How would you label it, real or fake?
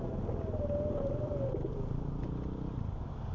real